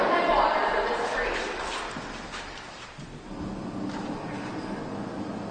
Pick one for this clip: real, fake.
real